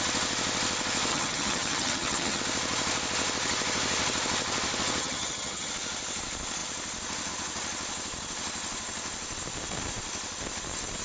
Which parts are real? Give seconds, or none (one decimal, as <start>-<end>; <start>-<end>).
0.0-1.1; 2.4-5.0; 5.7-11.0